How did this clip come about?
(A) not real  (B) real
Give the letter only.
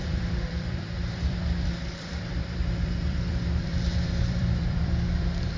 A